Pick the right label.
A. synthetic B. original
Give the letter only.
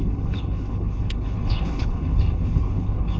A